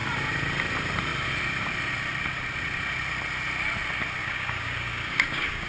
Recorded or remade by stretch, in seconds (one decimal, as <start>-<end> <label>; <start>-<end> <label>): 0.0-4.2 recorded; 4.2-5.7 remade